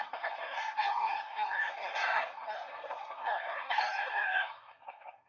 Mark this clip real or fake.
fake